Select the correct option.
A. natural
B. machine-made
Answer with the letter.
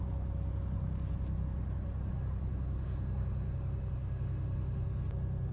A